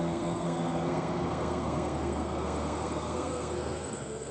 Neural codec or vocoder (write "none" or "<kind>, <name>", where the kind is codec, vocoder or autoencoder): codec, SNAC